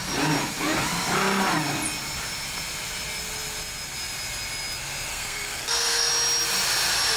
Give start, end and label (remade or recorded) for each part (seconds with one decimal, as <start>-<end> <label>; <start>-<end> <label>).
0.0-5.1 recorded; 5.1-6.1 remade; 6.1-7.2 recorded